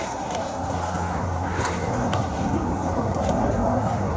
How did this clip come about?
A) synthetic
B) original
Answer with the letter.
A